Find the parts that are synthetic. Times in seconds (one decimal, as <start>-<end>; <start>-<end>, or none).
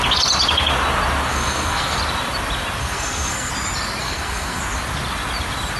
1.3-2.0; 2.8-3.5; 4.0-4.6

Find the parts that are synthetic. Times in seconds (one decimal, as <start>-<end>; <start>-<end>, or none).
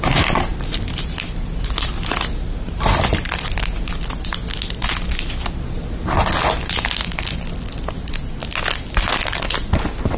none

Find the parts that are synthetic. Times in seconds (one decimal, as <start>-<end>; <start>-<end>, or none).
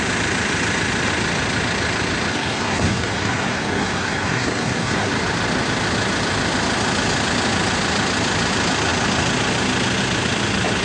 2.3-5.1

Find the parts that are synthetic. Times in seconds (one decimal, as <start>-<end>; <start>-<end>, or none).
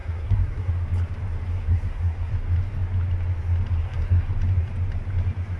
0.0-0.7; 1.5-2.3; 3.8-4.3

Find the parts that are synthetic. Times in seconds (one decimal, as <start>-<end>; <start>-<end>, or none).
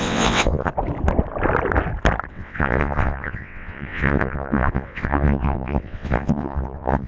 0.0-0.7; 2.3-7.1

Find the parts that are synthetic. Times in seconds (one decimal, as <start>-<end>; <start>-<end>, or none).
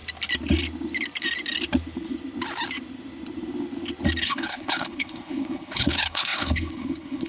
4.2-7.3